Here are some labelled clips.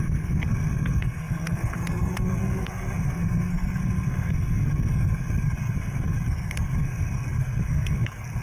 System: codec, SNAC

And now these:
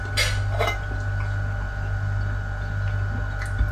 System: none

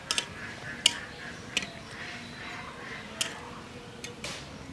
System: none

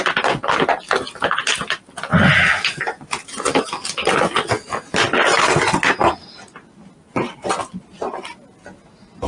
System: none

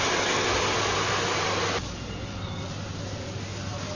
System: none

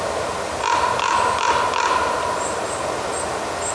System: none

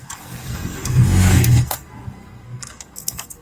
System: codec, SNAC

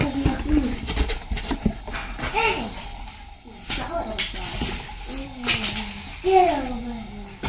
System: none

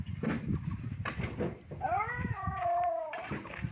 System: none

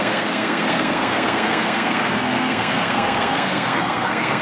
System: codec, SNAC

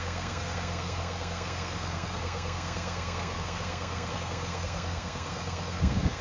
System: codec, SNAC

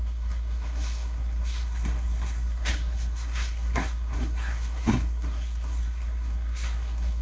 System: codec, SNAC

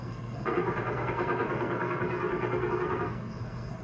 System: codec, SNAC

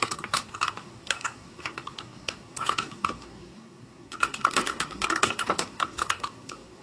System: codec, SNAC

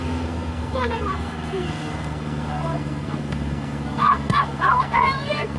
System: codec, SNAC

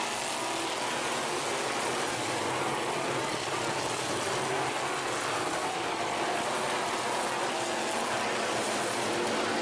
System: none